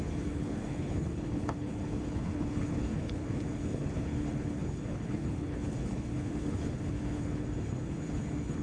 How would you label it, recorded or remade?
remade